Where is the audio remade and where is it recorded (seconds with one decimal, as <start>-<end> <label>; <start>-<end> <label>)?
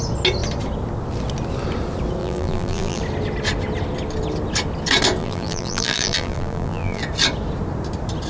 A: 0.0-2.2 recorded; 2.2-3.0 remade; 3.0-5.2 recorded; 5.2-7.0 remade; 7.0-8.3 recorded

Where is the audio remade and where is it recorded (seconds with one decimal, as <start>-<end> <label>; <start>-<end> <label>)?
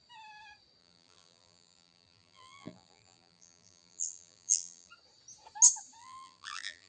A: 0.0-0.8 recorded; 0.8-4.9 remade; 4.9-6.0 recorded; 6.0-6.9 remade